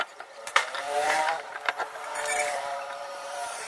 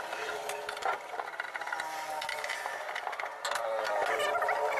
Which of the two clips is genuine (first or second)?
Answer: second